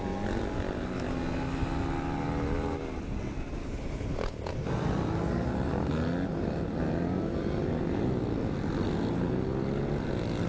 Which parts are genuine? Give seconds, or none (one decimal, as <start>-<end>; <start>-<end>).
0.0-3.6; 4.5-10.5